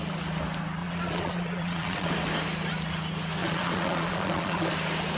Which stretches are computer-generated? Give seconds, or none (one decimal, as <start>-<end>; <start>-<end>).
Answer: 0.8-2.1; 3.4-4.7